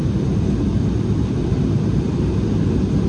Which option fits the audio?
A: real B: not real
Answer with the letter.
A